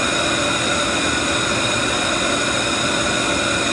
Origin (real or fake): real